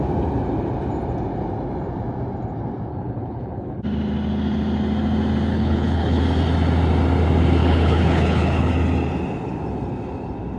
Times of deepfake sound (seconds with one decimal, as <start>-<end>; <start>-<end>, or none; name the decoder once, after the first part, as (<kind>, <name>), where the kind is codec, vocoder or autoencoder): 2.9-3.8 (codec, HILCodec); 5.5-6.2; 7.6-8.7